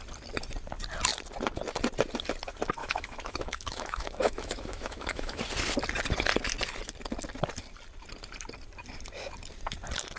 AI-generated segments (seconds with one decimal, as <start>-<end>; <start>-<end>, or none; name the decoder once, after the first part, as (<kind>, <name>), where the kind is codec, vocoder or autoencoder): 2.8-5.4 (autoencoder, DAC-VAE)